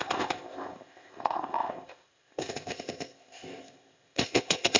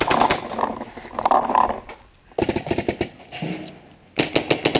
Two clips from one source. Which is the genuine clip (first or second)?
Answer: second